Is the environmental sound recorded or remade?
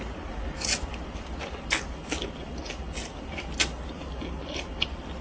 recorded